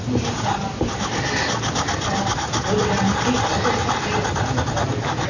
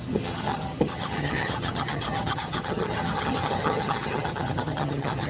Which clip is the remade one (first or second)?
second